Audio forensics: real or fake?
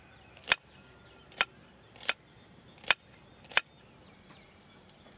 real